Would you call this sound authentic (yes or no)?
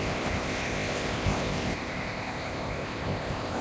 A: no